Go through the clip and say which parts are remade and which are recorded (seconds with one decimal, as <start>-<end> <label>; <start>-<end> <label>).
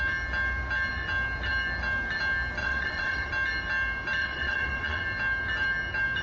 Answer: 0.0-2.6 recorded; 2.6-3.3 remade; 3.3-4.2 recorded; 4.2-5.0 remade; 5.0-6.2 recorded